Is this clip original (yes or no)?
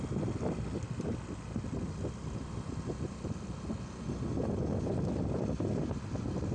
yes